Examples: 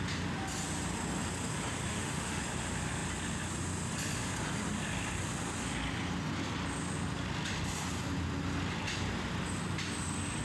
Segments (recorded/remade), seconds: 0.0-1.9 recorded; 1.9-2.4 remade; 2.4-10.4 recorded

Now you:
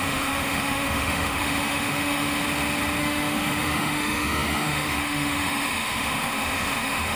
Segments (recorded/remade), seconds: 0.0-2.4 remade; 2.4-3.0 recorded; 3.0-7.2 remade

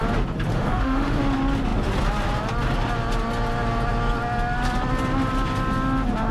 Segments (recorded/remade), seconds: 0.0-0.5 recorded; 0.5-1.2 remade; 1.2-6.3 recorded

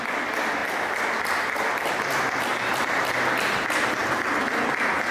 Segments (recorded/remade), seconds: 0.0-5.1 recorded

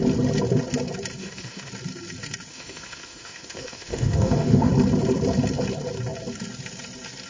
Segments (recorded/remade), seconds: 0.0-1.2 recorded; 1.2-1.7 remade; 1.7-2.5 recorded; 2.5-4.7 remade; 4.7-7.3 recorded

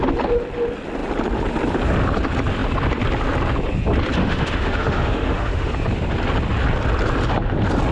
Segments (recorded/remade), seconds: 0.0-4.2 recorded; 4.2-5.7 remade; 5.7-7.9 recorded

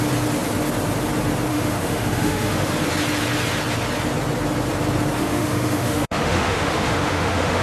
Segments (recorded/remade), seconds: 0.0-1.5 recorded; 1.5-2.7 remade; 2.7-5.2 recorded; 5.2-7.6 remade

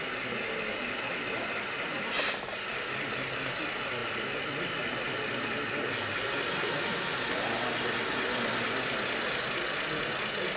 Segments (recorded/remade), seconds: 0.0-10.6 recorded